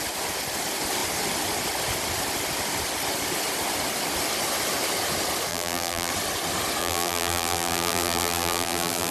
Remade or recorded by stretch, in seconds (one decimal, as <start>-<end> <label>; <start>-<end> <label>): 0.0-5.5 recorded; 5.5-6.1 remade; 6.1-6.8 recorded; 6.8-9.1 remade